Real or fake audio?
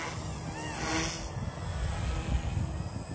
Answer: real